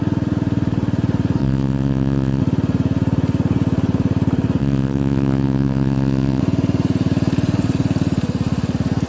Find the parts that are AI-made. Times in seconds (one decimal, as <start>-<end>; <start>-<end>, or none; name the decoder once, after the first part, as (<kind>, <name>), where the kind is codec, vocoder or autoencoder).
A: 1.4-2.4 (vocoder, WaveNeXt); 4.6-6.4